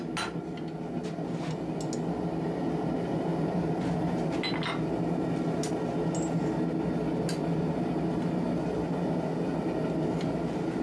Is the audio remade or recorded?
recorded